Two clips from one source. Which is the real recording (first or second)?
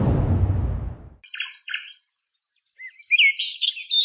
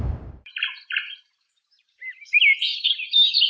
first